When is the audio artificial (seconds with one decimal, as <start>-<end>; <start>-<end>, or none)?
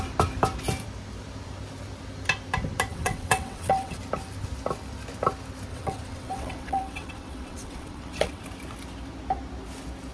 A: 2.9-4.0; 5.7-8.4